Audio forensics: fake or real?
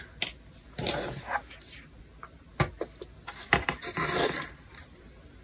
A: real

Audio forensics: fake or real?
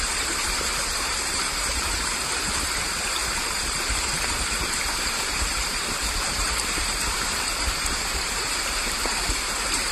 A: fake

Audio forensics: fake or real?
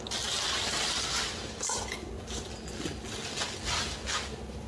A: real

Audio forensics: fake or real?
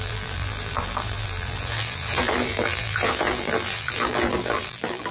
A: fake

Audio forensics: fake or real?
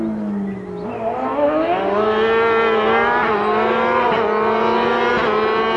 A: real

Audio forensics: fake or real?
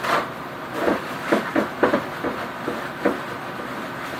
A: fake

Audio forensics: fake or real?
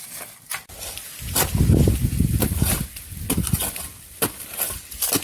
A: real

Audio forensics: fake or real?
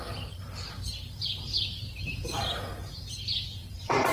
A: fake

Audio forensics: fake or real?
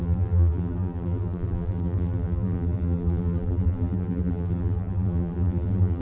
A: fake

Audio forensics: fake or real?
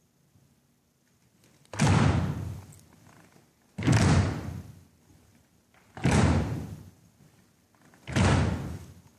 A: real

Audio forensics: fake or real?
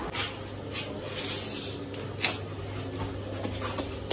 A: real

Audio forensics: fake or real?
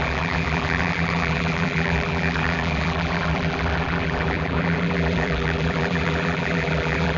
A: fake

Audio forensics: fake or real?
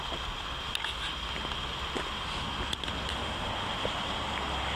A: real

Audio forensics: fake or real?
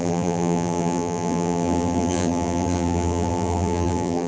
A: fake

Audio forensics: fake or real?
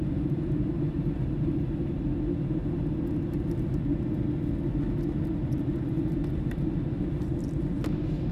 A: real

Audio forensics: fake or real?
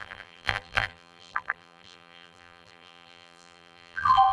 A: fake